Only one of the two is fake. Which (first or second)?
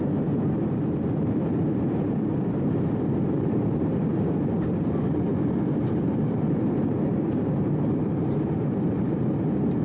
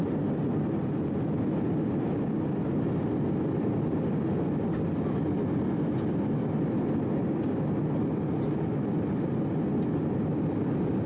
first